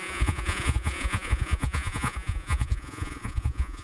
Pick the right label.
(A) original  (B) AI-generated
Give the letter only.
B